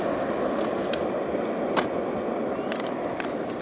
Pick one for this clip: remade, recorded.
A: recorded